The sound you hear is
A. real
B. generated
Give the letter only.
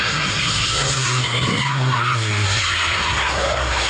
B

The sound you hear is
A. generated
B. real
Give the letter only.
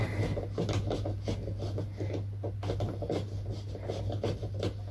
B